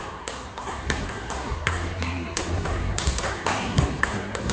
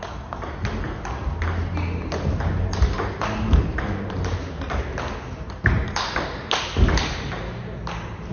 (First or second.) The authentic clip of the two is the second